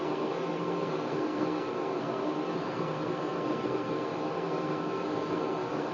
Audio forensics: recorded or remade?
remade